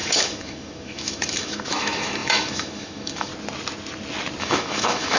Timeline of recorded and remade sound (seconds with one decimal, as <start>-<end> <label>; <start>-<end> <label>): 0.0-3.3 remade; 3.3-4.4 recorded; 4.4-5.2 remade